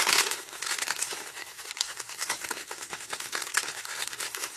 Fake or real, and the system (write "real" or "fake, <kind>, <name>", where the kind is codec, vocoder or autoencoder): fake, codec, SNAC